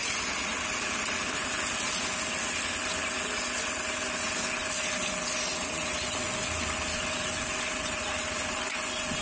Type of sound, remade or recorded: recorded